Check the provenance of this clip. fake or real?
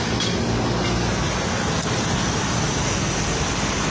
real